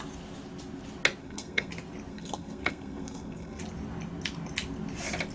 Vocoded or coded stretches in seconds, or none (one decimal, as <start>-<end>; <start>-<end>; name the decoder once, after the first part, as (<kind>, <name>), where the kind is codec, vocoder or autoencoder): 1.2-1.7 (codec, SNAC); 2.1-3.6